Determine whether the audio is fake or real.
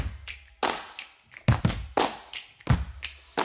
real